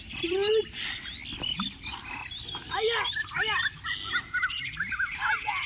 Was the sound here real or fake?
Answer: real